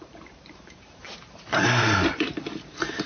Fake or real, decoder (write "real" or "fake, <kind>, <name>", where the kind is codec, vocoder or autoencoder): fake, vocoder, BigVGAN v2